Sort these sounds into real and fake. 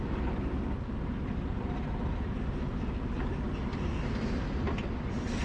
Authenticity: real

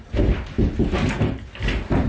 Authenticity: real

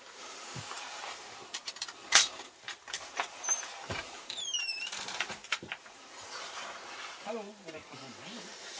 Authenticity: fake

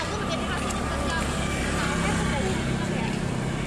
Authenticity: real